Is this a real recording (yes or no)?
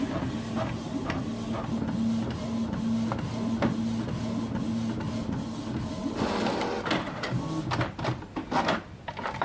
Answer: yes